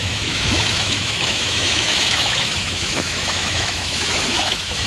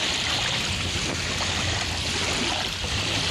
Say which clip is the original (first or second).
second